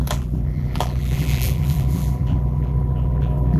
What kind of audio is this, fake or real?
fake